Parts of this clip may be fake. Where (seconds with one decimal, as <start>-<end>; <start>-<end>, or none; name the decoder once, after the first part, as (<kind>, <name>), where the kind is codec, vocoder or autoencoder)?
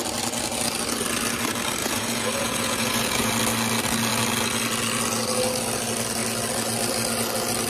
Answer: 1.8-3.3 (vocoder, Vocos)